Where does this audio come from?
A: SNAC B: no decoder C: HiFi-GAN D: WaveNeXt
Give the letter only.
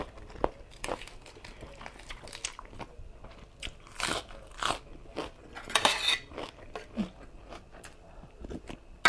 B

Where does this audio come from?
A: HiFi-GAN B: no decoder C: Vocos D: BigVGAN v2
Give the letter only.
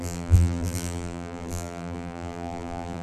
D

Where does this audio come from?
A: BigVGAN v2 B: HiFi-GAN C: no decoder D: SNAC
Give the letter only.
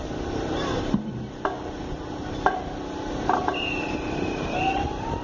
A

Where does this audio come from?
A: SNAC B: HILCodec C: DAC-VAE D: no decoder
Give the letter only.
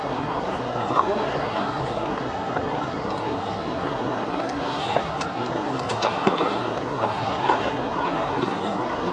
A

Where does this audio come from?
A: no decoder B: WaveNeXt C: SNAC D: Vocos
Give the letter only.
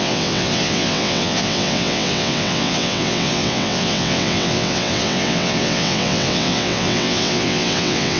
B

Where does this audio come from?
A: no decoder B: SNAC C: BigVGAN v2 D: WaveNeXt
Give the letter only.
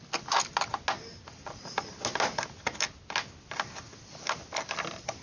A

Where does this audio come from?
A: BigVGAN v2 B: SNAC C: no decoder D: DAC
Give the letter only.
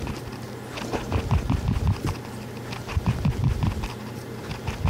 A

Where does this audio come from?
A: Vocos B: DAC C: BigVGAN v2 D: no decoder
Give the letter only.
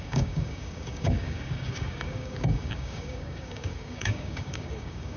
B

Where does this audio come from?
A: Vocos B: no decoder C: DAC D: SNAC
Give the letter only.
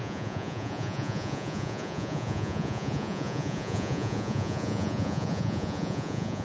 A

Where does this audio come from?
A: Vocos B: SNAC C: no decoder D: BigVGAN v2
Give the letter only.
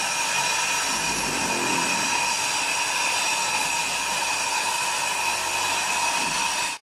C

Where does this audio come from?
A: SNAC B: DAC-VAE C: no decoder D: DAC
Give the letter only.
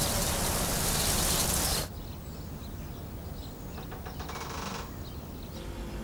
C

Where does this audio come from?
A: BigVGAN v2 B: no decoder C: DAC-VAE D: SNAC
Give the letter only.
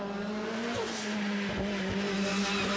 B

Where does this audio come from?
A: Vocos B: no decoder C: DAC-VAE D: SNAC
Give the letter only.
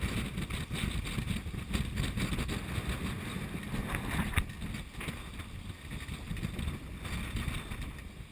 B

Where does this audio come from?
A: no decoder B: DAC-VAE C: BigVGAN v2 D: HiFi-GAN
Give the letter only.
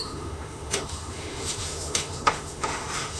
B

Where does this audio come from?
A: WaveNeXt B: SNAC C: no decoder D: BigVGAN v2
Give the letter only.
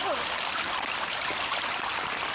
C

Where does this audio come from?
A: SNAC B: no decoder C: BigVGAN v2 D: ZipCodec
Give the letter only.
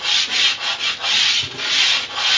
B